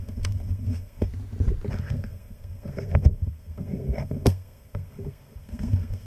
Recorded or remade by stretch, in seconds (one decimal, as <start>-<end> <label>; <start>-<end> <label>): 0.0-1.1 remade; 1.1-1.7 recorded; 1.7-6.1 remade